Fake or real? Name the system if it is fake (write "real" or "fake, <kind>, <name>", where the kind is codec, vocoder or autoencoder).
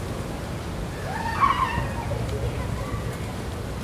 real